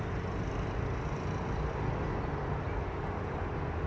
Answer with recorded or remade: recorded